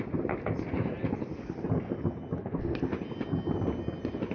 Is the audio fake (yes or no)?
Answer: no